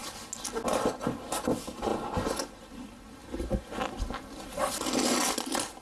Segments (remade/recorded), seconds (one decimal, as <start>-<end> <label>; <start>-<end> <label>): 0.0-5.8 recorded